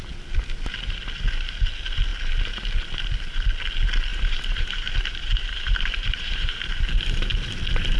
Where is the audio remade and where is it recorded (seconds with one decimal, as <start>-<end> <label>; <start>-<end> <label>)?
0.0-4.1 recorded; 4.1-7.3 remade; 7.3-8.0 recorded